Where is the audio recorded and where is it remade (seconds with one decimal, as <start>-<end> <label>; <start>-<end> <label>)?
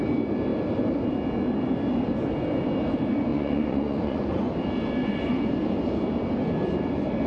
0.0-3.3 recorded; 3.3-4.5 remade; 4.5-5.0 recorded; 5.0-5.5 remade; 5.5-7.3 recorded